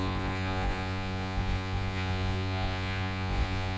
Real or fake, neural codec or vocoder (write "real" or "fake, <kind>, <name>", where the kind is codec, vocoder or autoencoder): fake, vocoder, Vocos